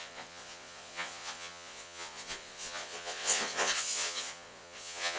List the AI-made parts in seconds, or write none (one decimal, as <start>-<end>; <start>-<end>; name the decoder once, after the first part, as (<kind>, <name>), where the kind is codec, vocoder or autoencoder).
0.0-5.2 (vocoder, Vocos)